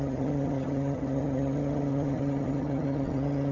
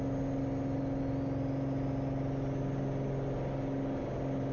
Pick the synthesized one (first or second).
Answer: first